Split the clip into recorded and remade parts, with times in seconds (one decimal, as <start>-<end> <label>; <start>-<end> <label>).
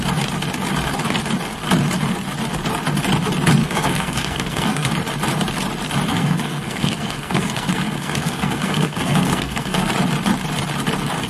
0.0-3.6 recorded; 3.6-4.9 remade; 4.9-6.1 recorded; 6.1-9.9 remade; 9.9-11.3 recorded